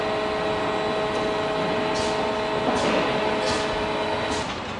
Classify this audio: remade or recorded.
recorded